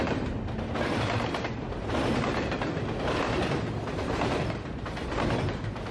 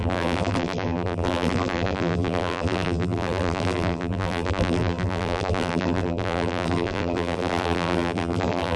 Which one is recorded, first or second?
first